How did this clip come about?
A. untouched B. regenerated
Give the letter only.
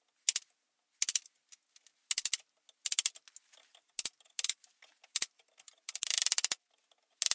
A